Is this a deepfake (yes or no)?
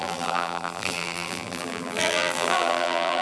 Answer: yes